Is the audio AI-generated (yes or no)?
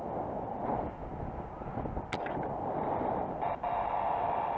no